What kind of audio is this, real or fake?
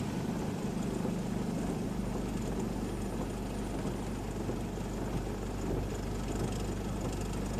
real